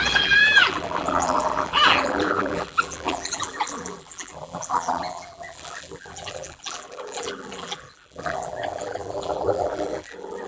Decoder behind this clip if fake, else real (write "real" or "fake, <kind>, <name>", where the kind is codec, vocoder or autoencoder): fake, vocoder, BigVGAN v2